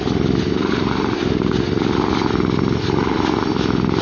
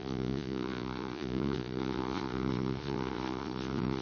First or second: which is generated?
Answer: second